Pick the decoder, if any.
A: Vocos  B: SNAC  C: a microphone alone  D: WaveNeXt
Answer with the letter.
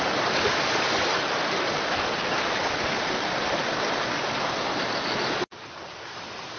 C